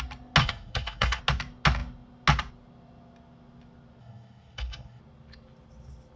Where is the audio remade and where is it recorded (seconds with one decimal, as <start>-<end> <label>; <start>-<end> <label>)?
0.0-0.4 recorded; 0.4-1.2 remade; 1.2-4.0 recorded; 4.0-5.0 remade; 5.0-6.2 recorded